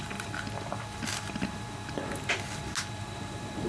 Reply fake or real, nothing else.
real